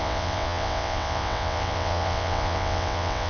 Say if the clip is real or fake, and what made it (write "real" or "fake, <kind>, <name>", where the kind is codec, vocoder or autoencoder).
fake, vocoder, WaveNeXt